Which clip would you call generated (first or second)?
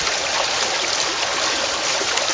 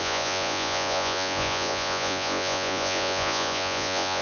second